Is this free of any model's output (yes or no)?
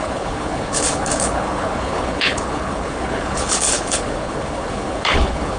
no